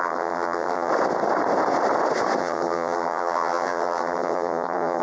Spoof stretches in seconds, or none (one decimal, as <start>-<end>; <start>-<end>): 0.0-0.9; 2.4-5.0